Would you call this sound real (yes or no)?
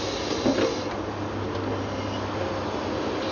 yes